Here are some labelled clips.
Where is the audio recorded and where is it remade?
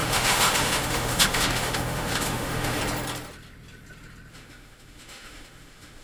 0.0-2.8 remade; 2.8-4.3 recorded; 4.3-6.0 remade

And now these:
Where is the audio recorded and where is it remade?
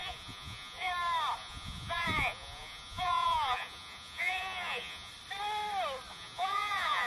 0.0-0.9 remade; 0.9-1.4 recorded; 1.4-5.1 remade; 5.1-6.1 recorded; 6.1-7.1 remade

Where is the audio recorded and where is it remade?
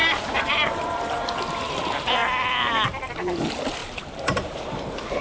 0.0-1.0 remade; 1.0-3.8 recorded; 3.8-5.2 remade